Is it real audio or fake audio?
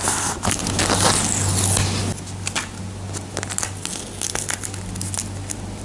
real